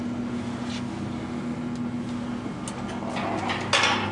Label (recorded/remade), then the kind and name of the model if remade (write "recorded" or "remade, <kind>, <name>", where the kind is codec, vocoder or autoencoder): recorded